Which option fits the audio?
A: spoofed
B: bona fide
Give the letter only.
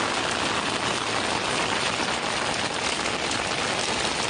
B